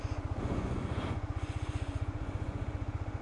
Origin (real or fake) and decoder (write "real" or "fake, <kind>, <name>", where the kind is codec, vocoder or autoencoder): fake, vocoder, Vocos